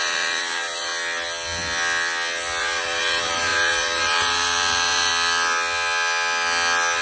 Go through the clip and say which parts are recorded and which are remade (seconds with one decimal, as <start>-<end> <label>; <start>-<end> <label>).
0.0-0.9 remade; 0.9-2.6 recorded; 2.6-5.1 remade; 5.1-7.0 recorded